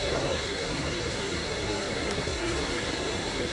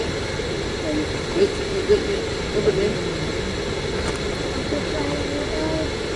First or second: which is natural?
second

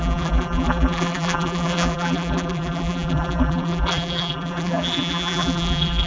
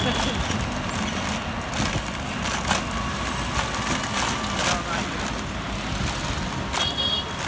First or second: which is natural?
second